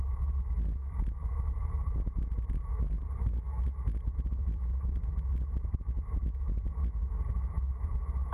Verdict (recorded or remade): remade